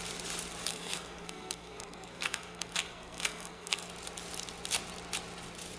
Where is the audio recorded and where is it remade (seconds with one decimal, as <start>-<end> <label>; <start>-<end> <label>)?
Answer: 0.0-0.7 recorded; 0.7-3.9 remade; 3.9-5.8 recorded